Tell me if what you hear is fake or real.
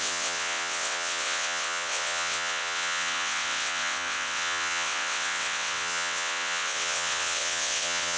fake